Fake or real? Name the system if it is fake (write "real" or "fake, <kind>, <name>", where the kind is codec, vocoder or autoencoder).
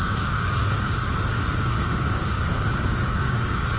fake, codec, DAC